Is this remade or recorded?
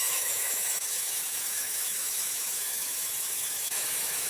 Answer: remade